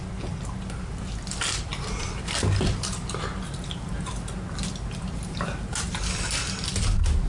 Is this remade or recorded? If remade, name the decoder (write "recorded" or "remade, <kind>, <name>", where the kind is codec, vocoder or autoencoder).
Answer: recorded